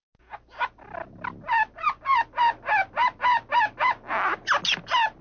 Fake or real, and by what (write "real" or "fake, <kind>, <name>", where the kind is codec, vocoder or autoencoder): real